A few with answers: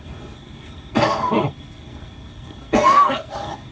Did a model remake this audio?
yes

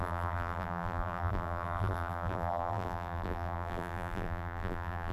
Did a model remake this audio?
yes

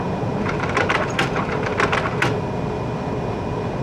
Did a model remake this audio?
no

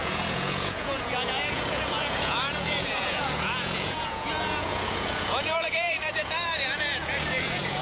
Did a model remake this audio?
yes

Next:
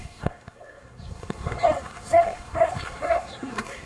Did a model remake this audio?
yes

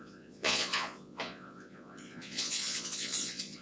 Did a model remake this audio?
yes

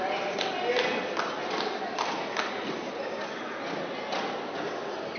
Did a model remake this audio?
no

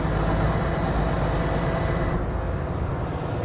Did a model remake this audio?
no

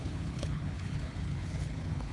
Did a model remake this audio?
yes